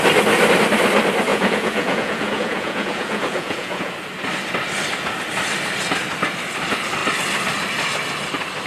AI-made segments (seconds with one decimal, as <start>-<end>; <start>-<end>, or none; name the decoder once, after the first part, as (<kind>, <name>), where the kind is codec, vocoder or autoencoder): 1.3-3.9 (vocoder, Vocos)